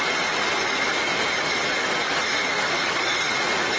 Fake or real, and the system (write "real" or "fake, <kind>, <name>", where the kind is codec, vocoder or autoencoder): real